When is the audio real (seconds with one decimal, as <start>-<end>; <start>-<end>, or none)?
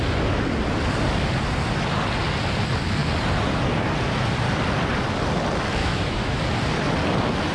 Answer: 0.0-5.8; 6.4-7.5